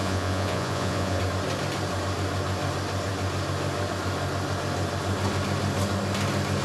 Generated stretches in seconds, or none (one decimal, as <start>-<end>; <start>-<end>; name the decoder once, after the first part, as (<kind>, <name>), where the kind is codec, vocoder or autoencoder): 0.0-1.2 (vocoder, Vocos)